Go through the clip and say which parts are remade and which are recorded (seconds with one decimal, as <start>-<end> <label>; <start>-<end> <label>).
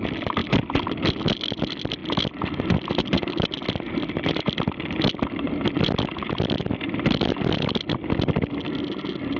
0.0-9.4 recorded